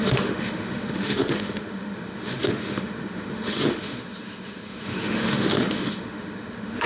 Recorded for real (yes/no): no